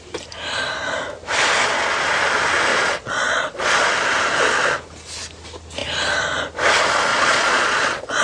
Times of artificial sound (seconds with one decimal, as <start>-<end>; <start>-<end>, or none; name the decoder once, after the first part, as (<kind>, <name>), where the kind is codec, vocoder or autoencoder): 2.7-3.9 (vocoder, Vocos); 7.1-8.2